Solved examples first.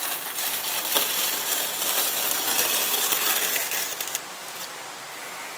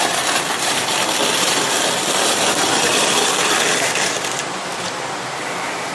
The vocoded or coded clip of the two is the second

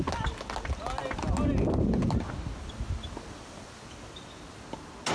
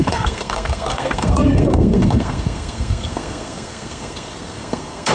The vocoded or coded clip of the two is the second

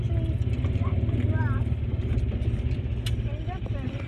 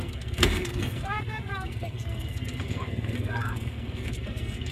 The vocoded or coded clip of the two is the second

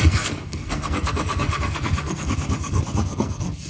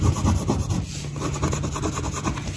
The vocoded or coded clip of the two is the first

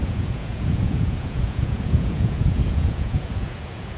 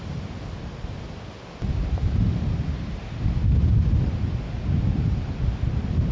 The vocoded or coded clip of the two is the first